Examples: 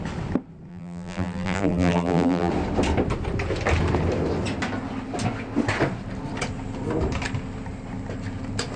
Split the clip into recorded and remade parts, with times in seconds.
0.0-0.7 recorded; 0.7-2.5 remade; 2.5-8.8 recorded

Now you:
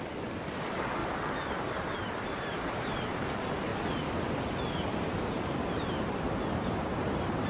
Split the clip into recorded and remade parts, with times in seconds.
0.0-1.0 remade; 1.0-1.6 recorded; 1.6-3.7 remade; 3.7-5.2 recorded; 5.2-7.5 remade

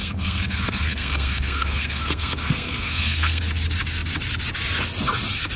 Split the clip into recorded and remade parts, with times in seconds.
0.0-3.4 remade; 3.4-5.6 recorded